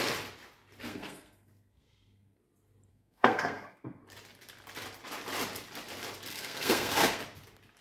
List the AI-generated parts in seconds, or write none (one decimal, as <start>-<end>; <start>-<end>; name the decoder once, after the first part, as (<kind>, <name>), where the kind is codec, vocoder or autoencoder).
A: 0.9-2.4 (codec, SNAC); 2.9-4.0; 6.3-7.2